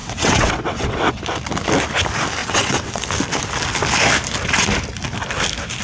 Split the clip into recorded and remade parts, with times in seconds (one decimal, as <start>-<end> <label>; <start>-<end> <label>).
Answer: 0.0-1.2 remade; 1.2-2.4 recorded; 2.4-3.0 remade; 3.0-5.8 recorded